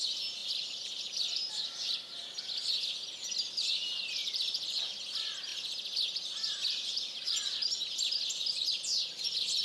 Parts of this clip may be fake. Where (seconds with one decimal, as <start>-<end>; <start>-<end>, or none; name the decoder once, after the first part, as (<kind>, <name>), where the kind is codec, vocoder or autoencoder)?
0.4-1.5 (vocoder, BigVGAN v2); 4.2-4.9